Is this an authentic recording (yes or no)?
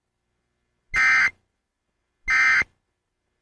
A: yes